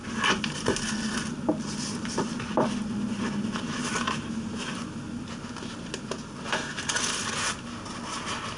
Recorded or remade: recorded